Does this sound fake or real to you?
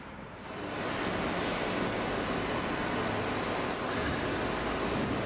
real